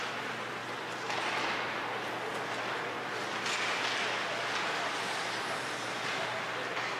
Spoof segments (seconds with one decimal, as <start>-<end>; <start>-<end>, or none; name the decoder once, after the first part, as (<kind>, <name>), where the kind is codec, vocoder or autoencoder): none